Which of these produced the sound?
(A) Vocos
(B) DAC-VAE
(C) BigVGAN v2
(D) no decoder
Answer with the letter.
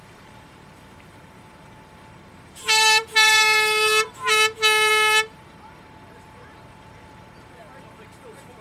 C